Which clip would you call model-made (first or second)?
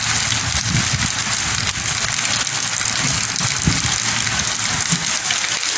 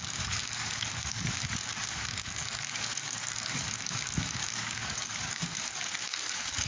second